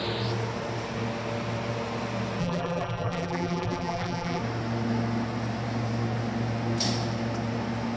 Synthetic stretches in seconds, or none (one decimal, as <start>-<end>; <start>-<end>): 2.4-4.4

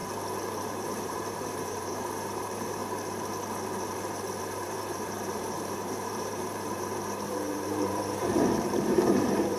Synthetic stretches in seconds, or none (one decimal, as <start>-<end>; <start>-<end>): 0.6-2.8; 4.4-9.6

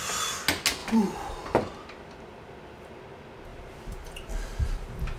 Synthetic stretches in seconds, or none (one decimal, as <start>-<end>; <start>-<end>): 0.8-2.9; 3.5-4.3